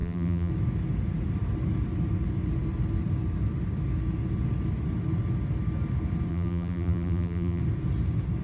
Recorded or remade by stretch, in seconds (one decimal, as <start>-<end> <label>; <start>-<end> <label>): 0.0-0.5 remade; 0.5-6.3 recorded; 6.3-7.6 remade; 7.6-8.4 recorded